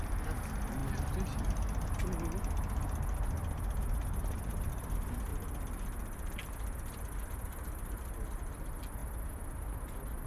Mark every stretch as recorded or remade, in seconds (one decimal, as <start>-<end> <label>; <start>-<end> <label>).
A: 0.0-10.3 recorded